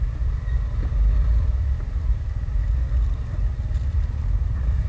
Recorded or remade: remade